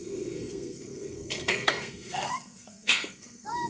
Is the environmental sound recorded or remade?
remade